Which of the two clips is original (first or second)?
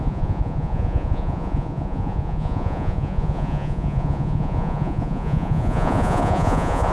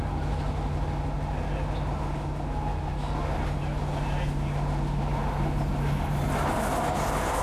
second